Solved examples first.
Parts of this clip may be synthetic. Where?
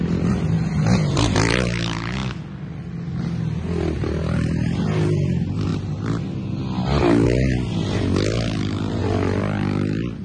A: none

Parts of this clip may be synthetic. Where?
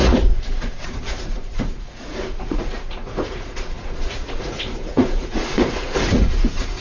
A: 0.0-6.8 (vocoder, Vocos)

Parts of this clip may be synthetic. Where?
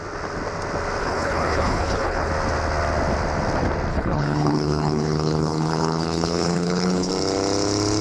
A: 1.0-2.3 (codec, HILCodec); 3.9-7.1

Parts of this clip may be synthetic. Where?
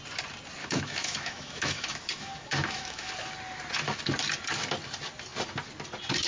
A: 0.6-3.1 (autoencoder, DAC-VAE)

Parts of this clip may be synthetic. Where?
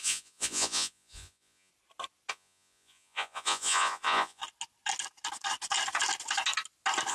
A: 0.0-1.7 (vocoder, Vocos); 2.3-4.4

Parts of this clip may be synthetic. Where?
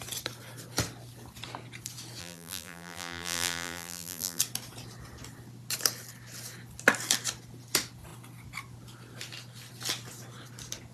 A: 2.2-4.4 (vocoder, BigVGAN v2)